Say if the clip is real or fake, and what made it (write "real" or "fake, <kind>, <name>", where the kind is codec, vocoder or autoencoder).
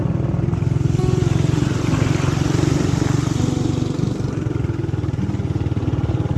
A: real